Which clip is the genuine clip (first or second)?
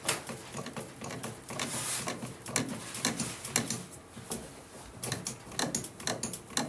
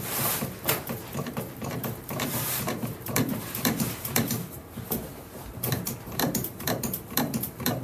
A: first